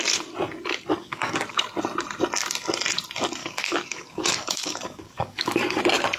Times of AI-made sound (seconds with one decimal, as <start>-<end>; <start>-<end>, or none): 1.0-1.6; 3.4-5.8